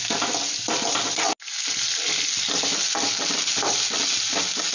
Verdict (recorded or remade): recorded